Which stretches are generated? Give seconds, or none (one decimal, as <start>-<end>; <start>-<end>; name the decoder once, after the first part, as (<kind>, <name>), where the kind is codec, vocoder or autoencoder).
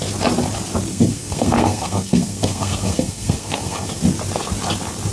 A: 0.9-4.0 (codec, SNAC)